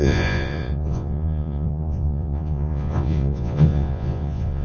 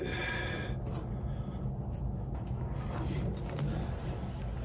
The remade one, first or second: first